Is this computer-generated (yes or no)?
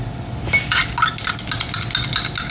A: no